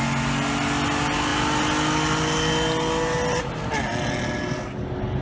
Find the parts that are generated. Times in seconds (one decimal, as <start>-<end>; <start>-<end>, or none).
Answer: none